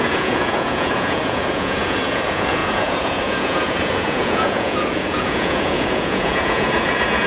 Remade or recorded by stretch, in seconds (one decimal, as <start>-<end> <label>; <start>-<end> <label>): 0.0-7.3 remade